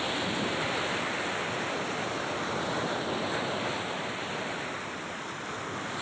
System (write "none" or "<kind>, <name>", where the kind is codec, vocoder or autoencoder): none